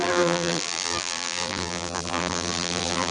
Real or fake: fake